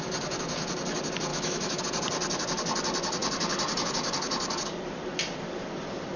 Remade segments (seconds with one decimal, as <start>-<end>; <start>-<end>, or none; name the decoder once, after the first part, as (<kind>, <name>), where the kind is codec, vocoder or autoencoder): 1.3-1.8 (autoencoder, DAC-VAE)